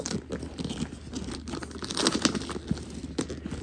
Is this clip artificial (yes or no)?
no